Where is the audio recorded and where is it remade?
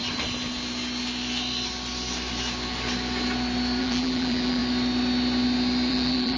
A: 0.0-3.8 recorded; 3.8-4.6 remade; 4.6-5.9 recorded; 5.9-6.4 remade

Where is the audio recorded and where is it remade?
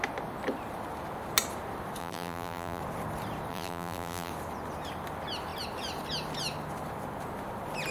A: 0.0-2.0 recorded; 2.0-2.8 remade; 2.8-3.5 recorded; 3.5-4.3 remade; 4.3-7.9 recorded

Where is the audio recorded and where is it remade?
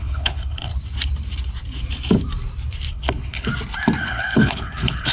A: 0.0-0.7 remade; 0.7-2.9 recorded; 2.9-3.5 remade; 3.5-4.0 recorded; 4.0-5.1 remade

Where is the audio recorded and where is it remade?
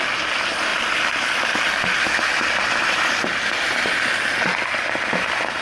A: 0.0-0.7 recorded; 0.7-4.1 remade; 4.1-5.6 recorded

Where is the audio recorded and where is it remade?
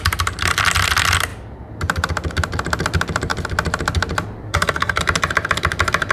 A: 0.0-4.5 recorded; 4.5-5.0 remade; 5.0-6.1 recorded